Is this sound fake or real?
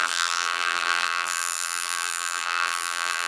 fake